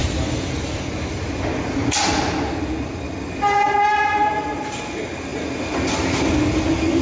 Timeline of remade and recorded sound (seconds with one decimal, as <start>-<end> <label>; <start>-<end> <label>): 0.0-7.0 recorded